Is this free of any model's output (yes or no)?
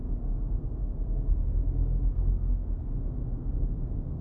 no